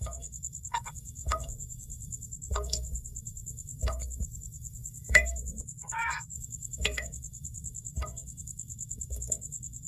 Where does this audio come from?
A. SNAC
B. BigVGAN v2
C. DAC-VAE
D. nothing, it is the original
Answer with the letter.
A